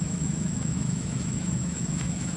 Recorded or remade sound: remade